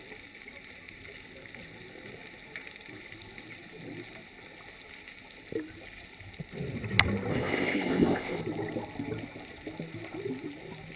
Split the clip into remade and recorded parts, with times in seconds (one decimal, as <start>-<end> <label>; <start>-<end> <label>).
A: 0.0-7.3 recorded; 7.3-8.4 remade; 8.4-11.0 recorded